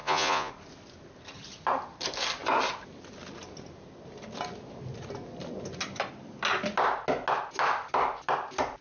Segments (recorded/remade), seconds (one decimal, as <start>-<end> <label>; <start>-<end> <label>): 0.0-0.5 remade; 0.5-8.8 recorded